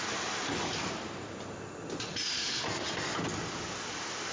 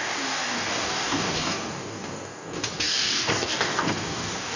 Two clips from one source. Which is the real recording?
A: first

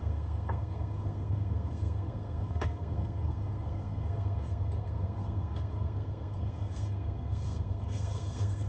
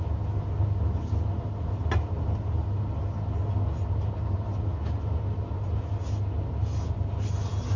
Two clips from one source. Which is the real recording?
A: second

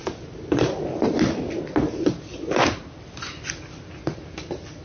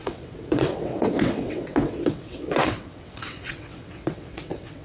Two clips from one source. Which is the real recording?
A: first